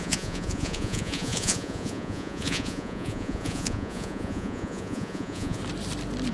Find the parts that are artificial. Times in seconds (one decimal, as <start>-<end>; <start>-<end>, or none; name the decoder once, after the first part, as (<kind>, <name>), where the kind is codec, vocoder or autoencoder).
0.0-5.6 (vocoder, Vocos)